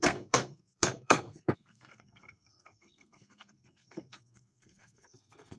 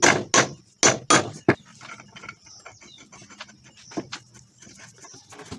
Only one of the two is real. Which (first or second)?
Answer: second